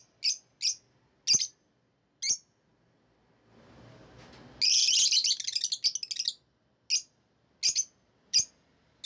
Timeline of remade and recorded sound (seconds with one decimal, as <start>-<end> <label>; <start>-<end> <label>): 0.0-9.1 recorded